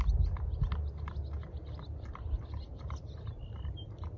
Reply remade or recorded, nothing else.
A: recorded